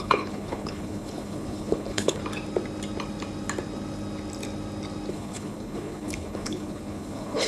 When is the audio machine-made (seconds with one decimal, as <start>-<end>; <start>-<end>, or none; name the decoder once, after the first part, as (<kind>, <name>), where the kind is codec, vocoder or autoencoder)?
0.0-2.2 (codec, HILCodec); 5.1-7.5